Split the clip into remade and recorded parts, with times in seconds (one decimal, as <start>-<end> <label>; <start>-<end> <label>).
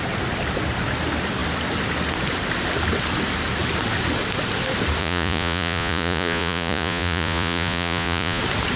0.0-5.0 recorded; 5.0-8.4 remade; 8.4-8.8 recorded